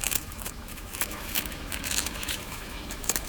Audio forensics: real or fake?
fake